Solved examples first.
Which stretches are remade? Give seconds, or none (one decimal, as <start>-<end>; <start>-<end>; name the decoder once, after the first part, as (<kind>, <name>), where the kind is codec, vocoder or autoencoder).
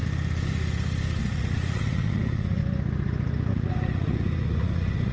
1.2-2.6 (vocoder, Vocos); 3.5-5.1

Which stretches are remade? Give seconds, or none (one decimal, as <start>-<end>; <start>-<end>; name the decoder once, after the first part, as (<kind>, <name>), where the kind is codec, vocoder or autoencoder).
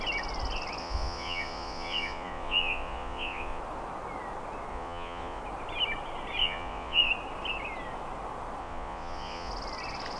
0.8-3.6 (vocoder, Vocos); 4.7-5.4; 6.4-7.1; 8.6-9.5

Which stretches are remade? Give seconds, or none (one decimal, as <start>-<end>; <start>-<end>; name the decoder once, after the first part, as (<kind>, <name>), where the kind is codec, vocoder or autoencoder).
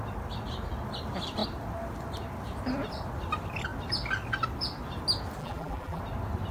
5.4-6.0 (vocoder, BigVGAN v2)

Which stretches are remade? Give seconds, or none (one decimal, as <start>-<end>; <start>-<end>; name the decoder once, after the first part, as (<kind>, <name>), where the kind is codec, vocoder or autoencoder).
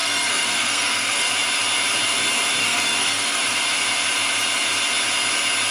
0.0-1.3 (codec, SNAC); 2.6-3.4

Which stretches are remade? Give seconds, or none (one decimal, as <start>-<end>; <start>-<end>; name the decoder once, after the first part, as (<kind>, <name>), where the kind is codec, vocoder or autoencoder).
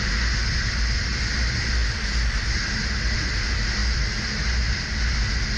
none